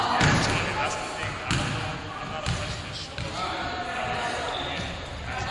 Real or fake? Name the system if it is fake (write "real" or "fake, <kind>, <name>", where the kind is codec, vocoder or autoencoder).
real